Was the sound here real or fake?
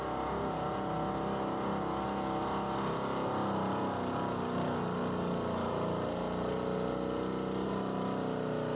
real